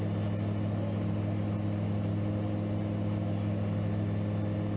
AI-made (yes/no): no